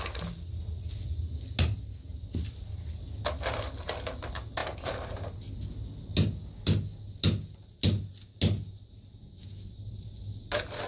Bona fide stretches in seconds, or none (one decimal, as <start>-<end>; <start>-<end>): 0.0-10.9